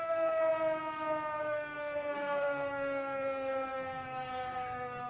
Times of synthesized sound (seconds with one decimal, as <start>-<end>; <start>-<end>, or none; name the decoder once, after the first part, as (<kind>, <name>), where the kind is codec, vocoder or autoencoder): 0.0-0.5 (codec, SNAC); 1.4-5.1